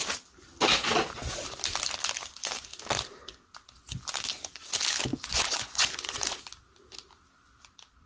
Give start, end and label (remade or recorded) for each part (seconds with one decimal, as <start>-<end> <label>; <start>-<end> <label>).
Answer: 0.0-5.1 recorded; 5.1-6.4 remade; 6.4-8.1 recorded